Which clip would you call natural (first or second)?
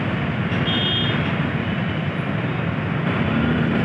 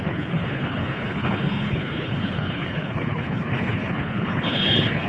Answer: first